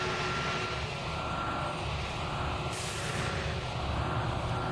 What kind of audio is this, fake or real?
real